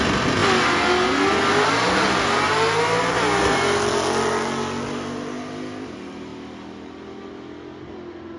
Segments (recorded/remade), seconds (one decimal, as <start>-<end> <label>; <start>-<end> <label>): 0.0-8.4 recorded